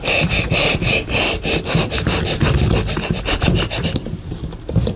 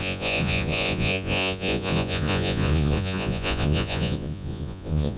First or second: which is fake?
second